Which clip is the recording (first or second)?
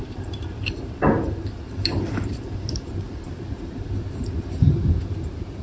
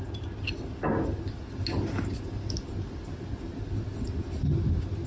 second